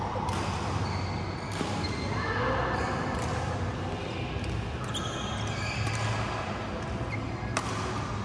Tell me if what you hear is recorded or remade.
recorded